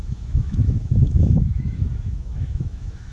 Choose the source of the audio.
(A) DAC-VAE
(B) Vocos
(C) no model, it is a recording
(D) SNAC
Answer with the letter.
A